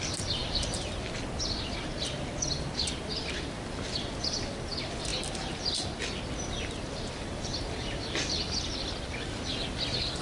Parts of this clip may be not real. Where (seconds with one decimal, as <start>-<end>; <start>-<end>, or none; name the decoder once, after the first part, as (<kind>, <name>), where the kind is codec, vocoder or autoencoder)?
none